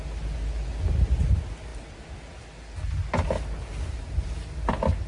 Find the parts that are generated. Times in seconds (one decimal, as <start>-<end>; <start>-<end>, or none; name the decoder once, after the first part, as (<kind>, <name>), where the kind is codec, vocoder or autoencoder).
none